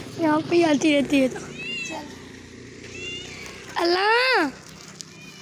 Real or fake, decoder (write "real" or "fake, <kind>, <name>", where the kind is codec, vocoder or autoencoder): real